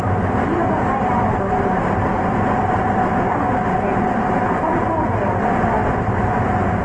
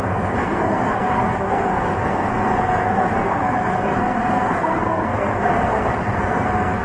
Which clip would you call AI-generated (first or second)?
second